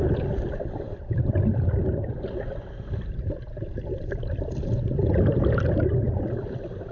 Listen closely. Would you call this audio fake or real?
real